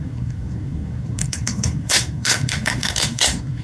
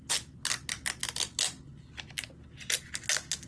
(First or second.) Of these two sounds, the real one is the second